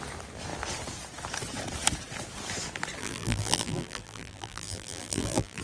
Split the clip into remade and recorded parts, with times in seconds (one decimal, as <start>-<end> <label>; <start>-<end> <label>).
0.0-3.0 recorded; 3.0-5.6 remade